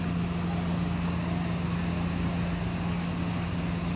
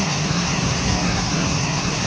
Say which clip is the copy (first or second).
second